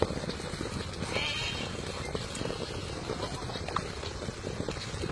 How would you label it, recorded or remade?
recorded